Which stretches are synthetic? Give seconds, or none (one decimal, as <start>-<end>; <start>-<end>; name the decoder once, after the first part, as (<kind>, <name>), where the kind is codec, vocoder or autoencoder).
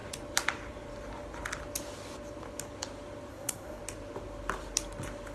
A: 3.3-3.8 (codec, SNAC)